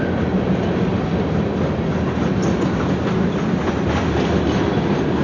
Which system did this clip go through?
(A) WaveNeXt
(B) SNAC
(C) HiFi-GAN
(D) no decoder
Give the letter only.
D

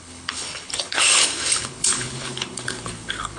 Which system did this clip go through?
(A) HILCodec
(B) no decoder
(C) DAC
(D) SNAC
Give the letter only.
A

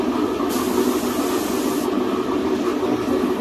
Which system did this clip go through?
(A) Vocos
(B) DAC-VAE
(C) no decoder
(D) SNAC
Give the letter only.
C